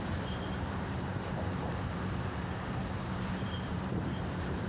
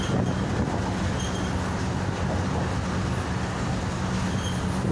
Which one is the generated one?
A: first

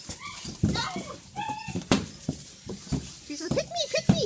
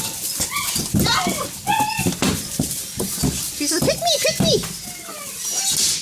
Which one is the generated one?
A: first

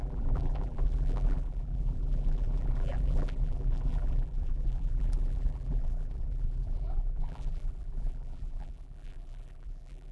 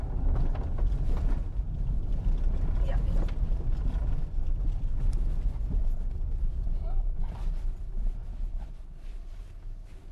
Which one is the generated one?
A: first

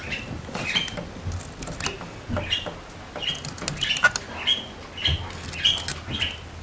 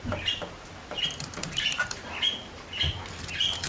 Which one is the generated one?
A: second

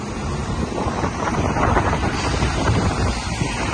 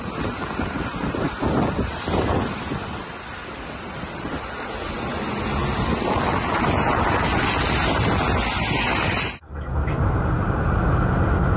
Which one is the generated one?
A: first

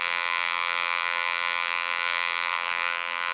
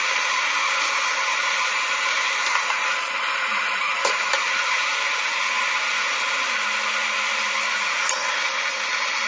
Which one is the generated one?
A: first